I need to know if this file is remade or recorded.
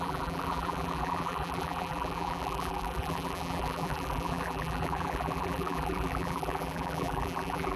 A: remade